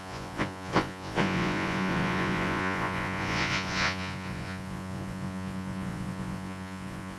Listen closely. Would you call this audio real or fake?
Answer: fake